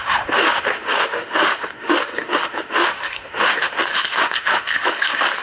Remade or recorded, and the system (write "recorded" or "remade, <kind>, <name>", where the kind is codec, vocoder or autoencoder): remade, autoencoder, DAC-VAE